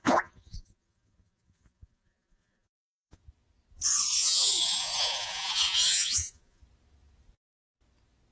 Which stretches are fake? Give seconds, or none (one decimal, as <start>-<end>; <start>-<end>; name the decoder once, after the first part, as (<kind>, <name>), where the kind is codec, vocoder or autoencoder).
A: 0.0-3.2 (vocoder, Vocos); 4.2-6.6